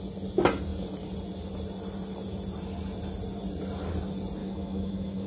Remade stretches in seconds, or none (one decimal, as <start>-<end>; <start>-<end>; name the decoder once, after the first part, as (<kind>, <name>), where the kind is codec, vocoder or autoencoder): 4.4-5.3 (autoencoder, DAC-VAE)